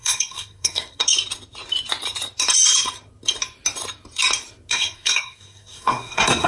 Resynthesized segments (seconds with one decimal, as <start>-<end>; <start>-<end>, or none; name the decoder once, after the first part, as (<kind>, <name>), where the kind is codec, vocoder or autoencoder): 0.0-1.0 (codec, SNAC); 4.7-6.5